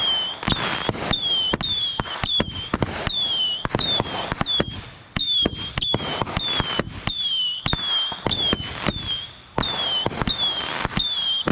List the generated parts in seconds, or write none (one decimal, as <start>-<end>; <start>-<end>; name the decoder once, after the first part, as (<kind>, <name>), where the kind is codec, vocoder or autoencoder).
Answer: none

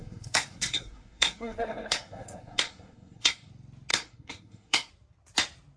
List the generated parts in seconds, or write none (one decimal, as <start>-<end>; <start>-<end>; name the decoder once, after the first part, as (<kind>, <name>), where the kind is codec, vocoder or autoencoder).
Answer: 0.0-3.5 (codec, SNAC); 3.9-4.9

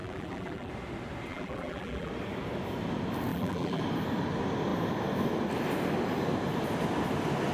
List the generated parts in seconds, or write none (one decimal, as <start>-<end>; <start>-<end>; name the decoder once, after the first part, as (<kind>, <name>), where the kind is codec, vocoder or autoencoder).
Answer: 0.0-0.7 (vocoder, BigVGAN v2); 1.3-2.1; 3.3-3.8

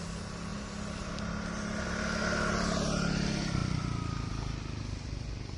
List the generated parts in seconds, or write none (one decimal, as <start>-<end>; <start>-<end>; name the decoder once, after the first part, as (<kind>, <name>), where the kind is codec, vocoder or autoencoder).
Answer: none